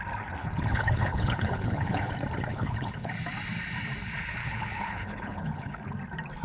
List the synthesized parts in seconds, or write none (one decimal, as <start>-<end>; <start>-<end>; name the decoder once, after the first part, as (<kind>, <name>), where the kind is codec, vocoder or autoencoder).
0.4-2.1 (codec, HILCodec); 2.5-3.1; 4.4-5.8